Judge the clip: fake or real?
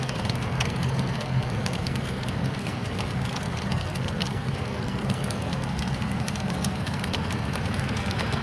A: fake